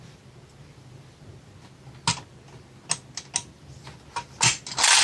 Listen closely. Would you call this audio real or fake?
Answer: real